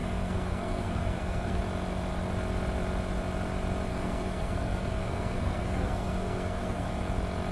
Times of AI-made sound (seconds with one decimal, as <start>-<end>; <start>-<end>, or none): 0.0-1.6; 3.9-6.9